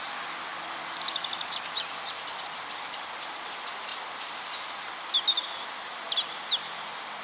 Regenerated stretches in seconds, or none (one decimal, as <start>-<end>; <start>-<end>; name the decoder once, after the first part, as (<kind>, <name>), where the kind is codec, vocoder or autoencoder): 3.9-5.4 (vocoder, BigVGAN v2)